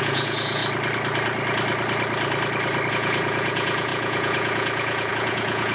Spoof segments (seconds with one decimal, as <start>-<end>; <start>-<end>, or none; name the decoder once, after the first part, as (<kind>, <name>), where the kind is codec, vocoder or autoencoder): 0.0-0.6 (vocoder, Vocos); 2.9-5.7

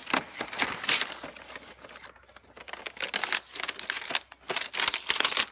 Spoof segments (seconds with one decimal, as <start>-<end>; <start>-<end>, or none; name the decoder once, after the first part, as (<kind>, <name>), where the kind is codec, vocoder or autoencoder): none